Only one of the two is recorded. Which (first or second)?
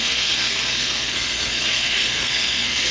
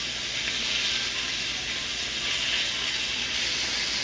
second